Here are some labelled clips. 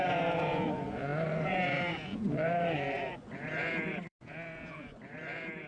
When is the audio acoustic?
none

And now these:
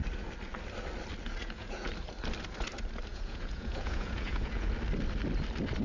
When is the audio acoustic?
0.0-1.4; 1.9-3.1; 4.7-5.8

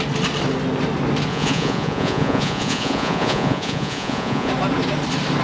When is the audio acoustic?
0.0-1.3; 4.5-5.4

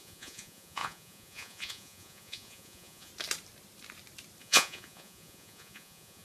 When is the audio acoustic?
3.1-4.4

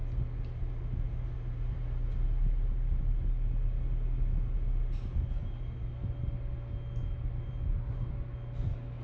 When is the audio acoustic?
0.0-9.0

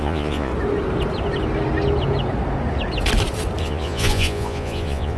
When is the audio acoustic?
0.5-3.6

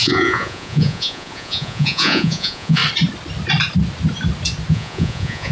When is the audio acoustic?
2.8-4.7